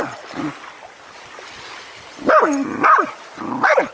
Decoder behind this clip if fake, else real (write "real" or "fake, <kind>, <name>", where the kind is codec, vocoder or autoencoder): real